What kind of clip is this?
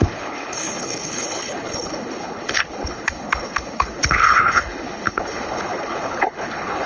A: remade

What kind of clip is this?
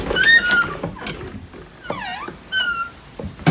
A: recorded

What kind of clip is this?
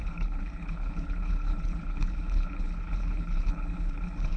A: remade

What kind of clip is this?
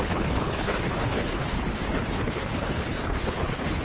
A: remade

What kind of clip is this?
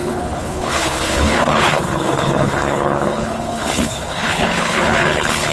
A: remade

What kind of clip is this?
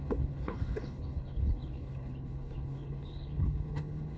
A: remade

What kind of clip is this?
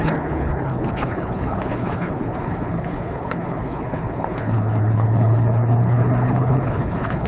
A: remade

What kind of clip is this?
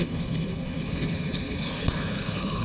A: remade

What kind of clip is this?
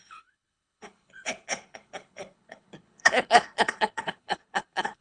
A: remade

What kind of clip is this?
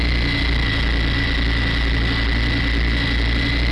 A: recorded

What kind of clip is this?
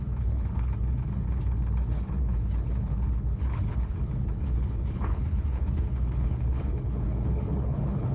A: remade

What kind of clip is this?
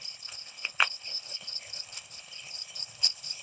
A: remade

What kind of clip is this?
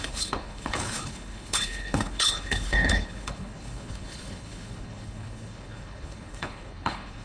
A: remade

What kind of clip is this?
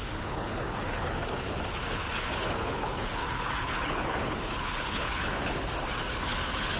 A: remade